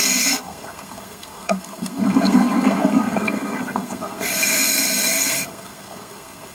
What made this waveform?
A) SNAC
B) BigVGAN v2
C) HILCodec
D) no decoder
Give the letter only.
A